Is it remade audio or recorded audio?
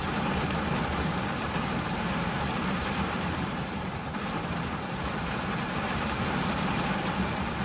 remade